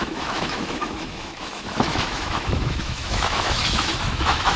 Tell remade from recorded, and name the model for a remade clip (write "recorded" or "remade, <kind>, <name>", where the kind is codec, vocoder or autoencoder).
remade, autoencoder, DAC-VAE